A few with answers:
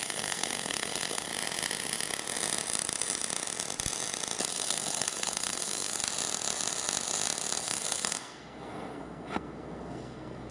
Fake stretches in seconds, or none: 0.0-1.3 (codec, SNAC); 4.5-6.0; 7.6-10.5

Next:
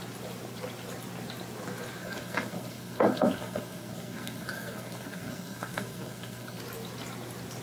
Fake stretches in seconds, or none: 2.0-6.6 (codec, SNAC)

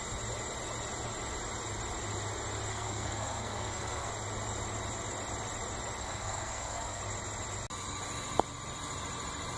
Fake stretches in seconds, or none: 2.7-4.1 (codec, SNAC); 6.0-7.0

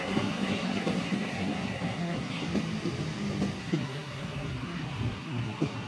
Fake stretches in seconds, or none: 0.0-2.5 (codec, SNAC); 3.6-5.9

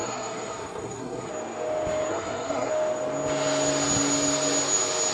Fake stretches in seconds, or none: 0.0-1.3 (codec, SNAC); 2.1-2.7

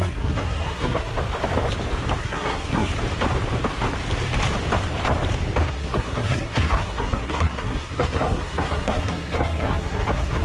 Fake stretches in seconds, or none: 0.0-1.1 (codec, SNAC); 2.2-2.9; 5.7-10.4